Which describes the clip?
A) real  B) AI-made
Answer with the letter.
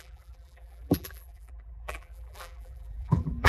B